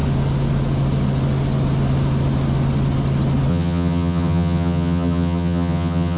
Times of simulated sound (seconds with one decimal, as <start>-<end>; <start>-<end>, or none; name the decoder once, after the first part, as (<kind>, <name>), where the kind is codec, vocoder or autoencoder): 3.5-6.2 (vocoder, HiFi-GAN)